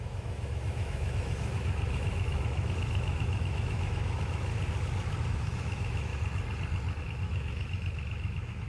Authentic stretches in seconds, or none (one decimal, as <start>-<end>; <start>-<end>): 4.5-5.3; 6.1-7.0